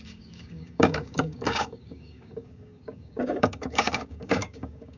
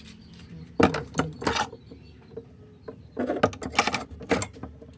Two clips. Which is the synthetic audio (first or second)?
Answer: first